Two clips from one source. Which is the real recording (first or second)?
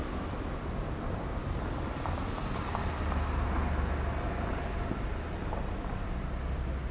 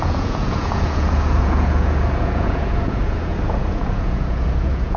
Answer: first